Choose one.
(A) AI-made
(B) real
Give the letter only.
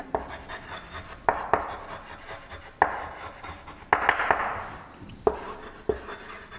B